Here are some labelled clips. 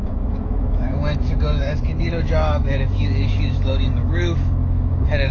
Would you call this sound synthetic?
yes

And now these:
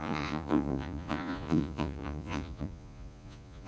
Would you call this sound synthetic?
yes